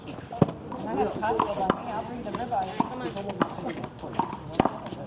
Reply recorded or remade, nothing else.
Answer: recorded